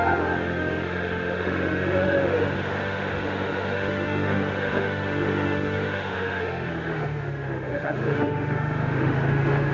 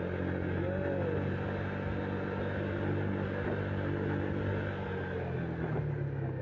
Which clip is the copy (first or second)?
first